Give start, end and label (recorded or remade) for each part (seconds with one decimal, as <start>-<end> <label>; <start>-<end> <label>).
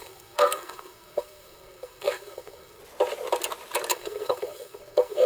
0.0-2.8 remade; 2.8-3.9 recorded; 3.9-5.3 remade